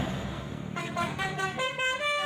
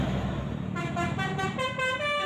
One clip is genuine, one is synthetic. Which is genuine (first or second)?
second